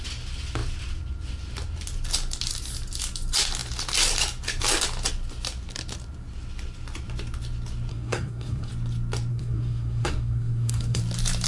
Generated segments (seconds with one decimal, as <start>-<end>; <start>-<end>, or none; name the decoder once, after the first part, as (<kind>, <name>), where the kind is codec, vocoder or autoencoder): 7.9-8.7 (codec, SNAC); 9.3-11.0